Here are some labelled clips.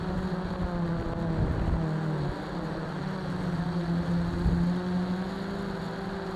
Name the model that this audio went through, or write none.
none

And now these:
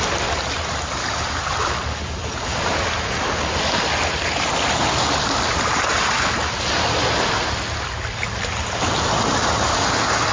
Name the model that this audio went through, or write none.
none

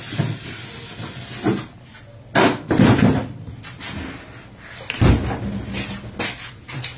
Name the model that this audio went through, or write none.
none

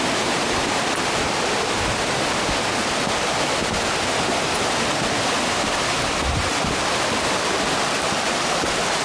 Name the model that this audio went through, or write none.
vocoder, BigVGAN v2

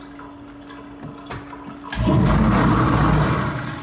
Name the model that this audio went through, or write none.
none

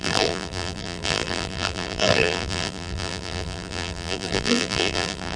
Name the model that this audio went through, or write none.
vocoder, BigVGAN v2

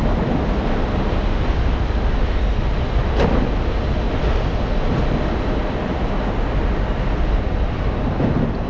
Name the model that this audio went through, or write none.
none